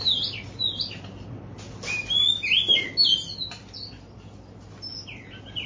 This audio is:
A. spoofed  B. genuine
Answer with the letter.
B